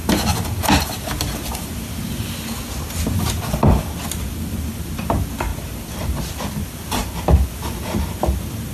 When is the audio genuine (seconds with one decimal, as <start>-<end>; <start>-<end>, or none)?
0.0-8.7